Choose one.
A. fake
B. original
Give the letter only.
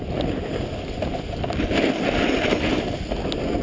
B